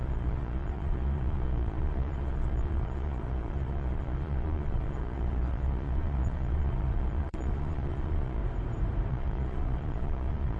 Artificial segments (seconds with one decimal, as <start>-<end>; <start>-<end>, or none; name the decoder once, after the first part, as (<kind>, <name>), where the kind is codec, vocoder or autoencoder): 0.0-8.4 (vocoder, Vocos); 9.1-10.6